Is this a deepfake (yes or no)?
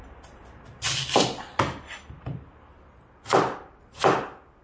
no